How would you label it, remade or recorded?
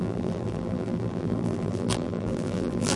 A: remade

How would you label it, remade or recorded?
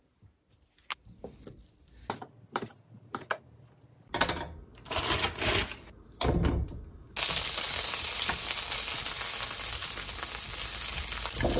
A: recorded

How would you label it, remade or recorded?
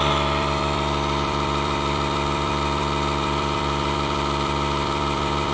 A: remade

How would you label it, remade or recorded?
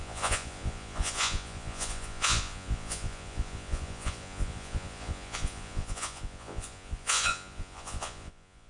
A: remade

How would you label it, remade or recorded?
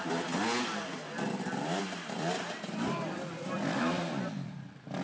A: recorded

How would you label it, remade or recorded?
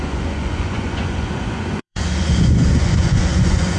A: remade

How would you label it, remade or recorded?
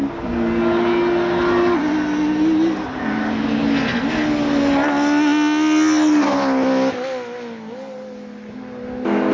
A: recorded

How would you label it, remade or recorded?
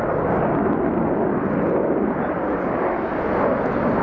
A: recorded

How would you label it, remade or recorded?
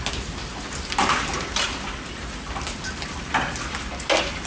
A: recorded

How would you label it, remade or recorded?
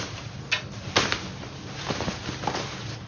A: recorded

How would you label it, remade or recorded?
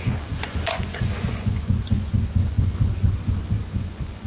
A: remade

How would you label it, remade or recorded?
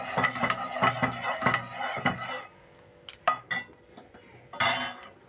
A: recorded